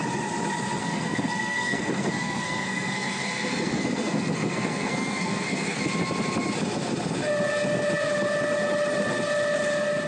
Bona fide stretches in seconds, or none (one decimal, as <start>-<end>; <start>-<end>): 0.0-0.8; 5.8-10.1